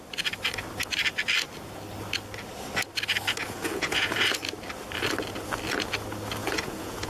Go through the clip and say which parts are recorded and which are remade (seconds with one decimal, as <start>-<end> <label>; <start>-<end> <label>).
0.0-3.4 recorded; 3.4-4.1 remade; 4.1-6.4 recorded; 6.4-7.1 remade